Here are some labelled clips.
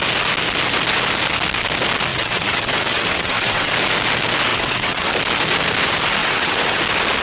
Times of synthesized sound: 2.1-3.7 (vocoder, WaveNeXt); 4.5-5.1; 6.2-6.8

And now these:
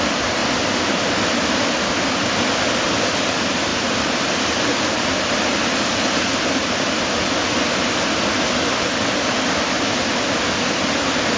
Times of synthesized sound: none

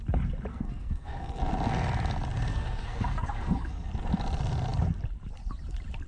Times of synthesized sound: 0.5-1.4 (codec, SNAC); 2.5-3.9